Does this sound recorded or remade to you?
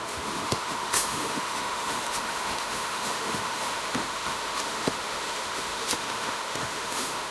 remade